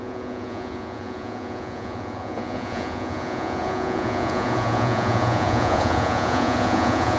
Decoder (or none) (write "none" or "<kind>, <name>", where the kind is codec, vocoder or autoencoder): vocoder, Vocos